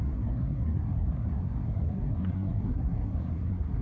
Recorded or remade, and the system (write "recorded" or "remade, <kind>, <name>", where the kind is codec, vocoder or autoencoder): remade, codec, SNAC